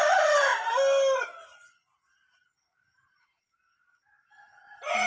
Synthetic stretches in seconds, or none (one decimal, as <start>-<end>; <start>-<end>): none